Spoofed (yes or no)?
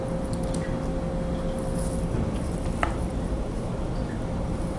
no